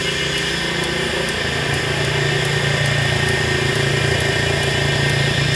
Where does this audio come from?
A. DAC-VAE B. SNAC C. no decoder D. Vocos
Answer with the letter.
C